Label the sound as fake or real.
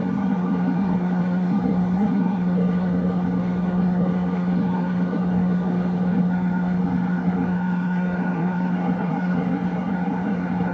fake